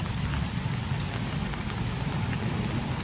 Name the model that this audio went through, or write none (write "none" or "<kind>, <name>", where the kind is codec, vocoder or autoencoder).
none